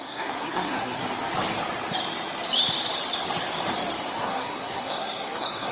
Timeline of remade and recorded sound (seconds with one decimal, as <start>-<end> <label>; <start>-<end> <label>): 0.0-1.0 remade; 1.0-4.2 recorded; 4.2-5.7 remade